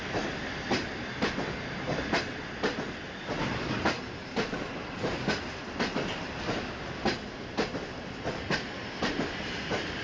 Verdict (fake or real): fake